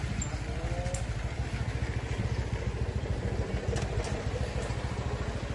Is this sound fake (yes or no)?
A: no